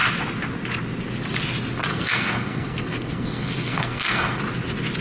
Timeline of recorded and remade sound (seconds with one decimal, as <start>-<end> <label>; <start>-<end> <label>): 0.0-1.9 recorded; 1.9-4.4 remade; 4.4-5.0 recorded